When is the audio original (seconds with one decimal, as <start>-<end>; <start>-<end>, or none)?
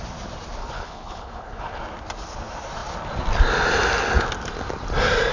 0.0-0.6; 1.8-5.3